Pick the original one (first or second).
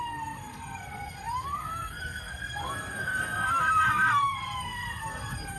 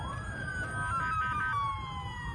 second